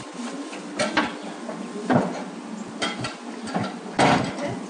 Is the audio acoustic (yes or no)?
yes